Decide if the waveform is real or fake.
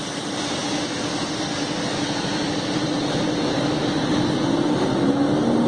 real